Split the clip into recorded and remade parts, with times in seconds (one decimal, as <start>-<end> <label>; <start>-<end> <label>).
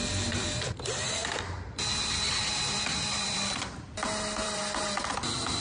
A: 0.0-4.6 remade; 4.6-5.6 recorded